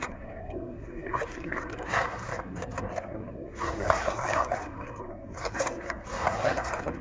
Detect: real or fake fake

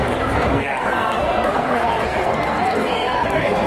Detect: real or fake fake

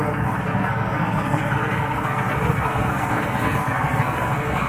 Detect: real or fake fake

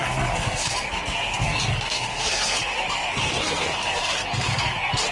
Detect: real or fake fake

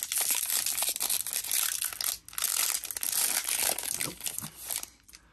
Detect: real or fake real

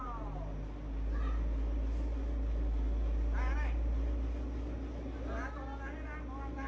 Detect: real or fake real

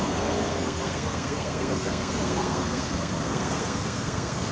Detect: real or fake fake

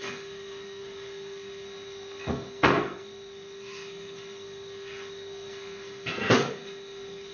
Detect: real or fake fake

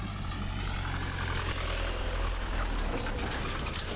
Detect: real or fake real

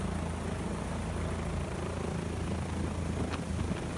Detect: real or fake real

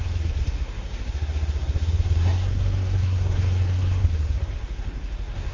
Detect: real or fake fake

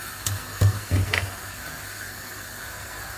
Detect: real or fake fake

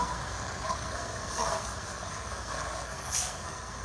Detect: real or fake fake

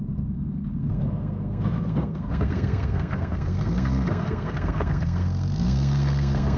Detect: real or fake fake